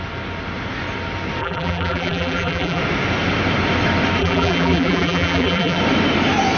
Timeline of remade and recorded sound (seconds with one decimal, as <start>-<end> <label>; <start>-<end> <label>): 0.0-1.4 recorded; 1.4-2.8 remade; 2.8-4.2 recorded; 4.2-5.8 remade; 5.8-6.6 recorded